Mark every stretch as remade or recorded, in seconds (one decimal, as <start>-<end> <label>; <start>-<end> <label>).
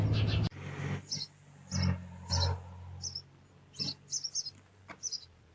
0.0-5.5 recorded